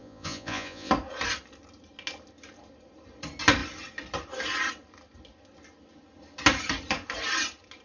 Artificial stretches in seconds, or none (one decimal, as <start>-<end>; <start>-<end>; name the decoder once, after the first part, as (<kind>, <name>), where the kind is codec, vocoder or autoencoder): 0.0-0.9 (vocoder, Vocos)

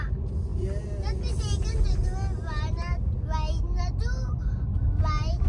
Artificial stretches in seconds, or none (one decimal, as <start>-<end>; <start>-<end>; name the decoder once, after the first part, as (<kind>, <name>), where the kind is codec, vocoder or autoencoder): none

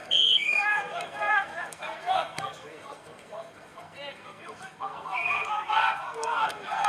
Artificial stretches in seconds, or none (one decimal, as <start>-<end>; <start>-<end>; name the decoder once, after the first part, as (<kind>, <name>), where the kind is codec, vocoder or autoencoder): 0.0-6.9 (codec, SNAC)